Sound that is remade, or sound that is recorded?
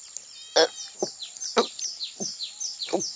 recorded